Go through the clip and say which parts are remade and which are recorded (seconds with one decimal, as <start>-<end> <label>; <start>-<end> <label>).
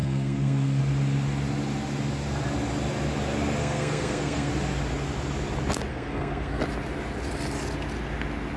0.0-0.8 remade; 0.8-3.6 recorded; 3.6-4.5 remade; 4.5-5.9 recorded; 5.9-6.6 remade; 6.6-8.6 recorded